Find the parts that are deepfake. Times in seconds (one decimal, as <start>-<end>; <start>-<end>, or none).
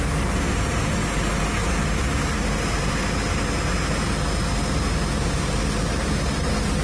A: none